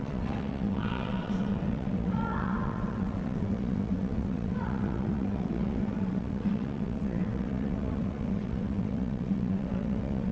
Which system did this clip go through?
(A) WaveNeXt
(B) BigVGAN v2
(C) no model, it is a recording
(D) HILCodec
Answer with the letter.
A